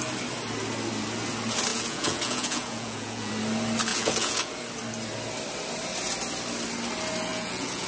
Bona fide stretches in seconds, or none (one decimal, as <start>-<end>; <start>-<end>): 0.0-1.7; 3.3-3.9; 4.5-7.3